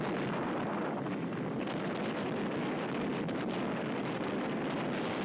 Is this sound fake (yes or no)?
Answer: no